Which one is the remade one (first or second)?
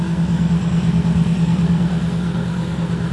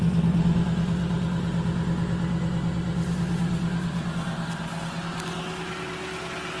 first